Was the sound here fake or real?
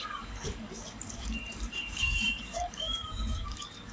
fake